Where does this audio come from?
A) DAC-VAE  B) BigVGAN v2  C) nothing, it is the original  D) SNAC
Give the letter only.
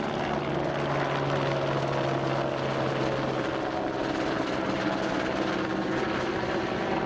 C